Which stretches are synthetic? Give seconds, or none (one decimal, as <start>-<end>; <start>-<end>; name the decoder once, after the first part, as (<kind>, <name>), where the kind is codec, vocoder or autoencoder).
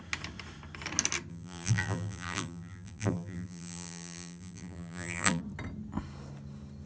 1.3-5.4 (vocoder, BigVGAN v2)